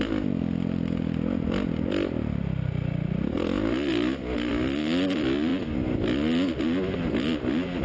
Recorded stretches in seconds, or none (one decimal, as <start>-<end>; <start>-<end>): 0.0-7.8